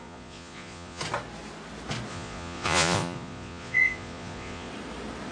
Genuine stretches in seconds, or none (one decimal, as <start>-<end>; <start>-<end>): 1.0-2.1; 4.7-5.3